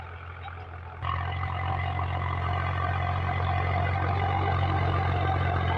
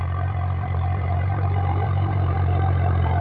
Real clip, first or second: first